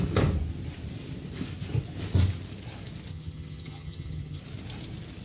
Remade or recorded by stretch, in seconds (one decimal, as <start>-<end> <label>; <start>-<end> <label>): 0.0-3.1 recorded; 3.1-4.4 remade; 4.4-5.2 recorded